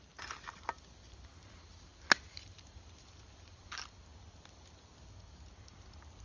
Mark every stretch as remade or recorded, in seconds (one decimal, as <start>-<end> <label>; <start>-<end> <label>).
0.0-6.2 recorded